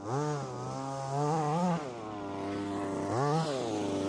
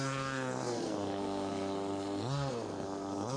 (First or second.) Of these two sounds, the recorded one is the first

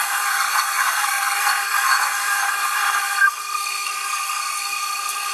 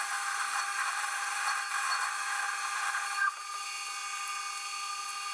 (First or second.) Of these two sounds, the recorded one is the second